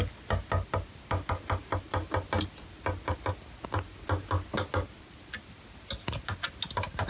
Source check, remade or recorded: recorded